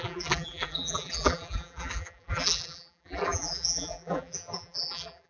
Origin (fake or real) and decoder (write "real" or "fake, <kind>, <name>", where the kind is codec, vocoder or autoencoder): fake, vocoder, BigVGAN v2